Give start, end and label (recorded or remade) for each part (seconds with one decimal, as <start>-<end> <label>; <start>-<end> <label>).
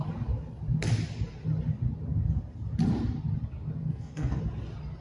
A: 0.0-3.8 recorded; 3.8-4.4 remade; 4.4-5.0 recorded